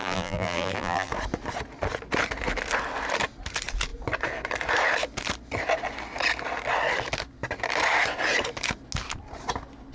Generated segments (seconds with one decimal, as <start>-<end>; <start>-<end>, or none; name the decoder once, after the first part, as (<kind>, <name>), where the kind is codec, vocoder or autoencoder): 0.0-1.1 (vocoder, BigVGAN v2)